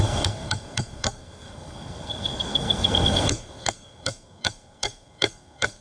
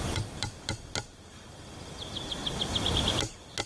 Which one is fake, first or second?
first